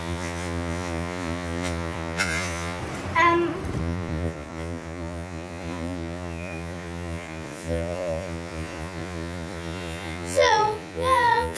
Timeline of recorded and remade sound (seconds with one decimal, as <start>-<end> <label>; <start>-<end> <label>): 0.0-2.8 remade; 2.8-3.8 recorded; 3.8-11.6 remade